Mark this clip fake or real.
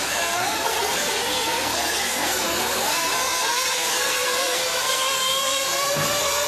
fake